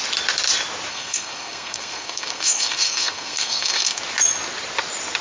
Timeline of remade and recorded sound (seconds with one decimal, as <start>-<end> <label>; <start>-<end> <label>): 0.0-0.9 recorded; 0.9-4.0 remade; 4.0-5.2 recorded